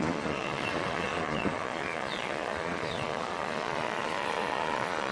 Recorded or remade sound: remade